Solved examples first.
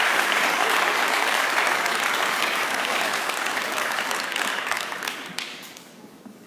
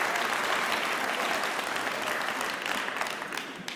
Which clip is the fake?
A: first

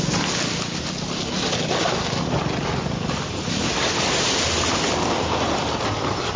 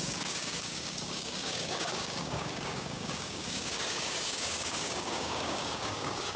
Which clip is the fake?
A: second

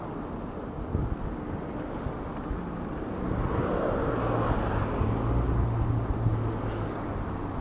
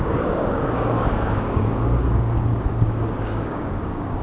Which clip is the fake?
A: second